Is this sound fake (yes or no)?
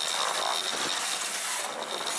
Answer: no